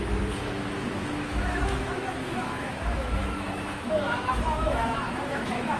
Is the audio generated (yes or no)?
yes